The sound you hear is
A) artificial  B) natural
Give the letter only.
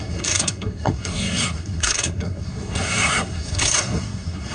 A